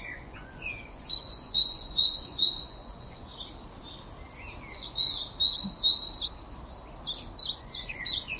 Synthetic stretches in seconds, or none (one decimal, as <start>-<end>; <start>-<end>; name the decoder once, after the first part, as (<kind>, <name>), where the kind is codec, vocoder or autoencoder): 0.0-3.3 (vocoder, Vocos); 4.7-5.2; 7.6-8.4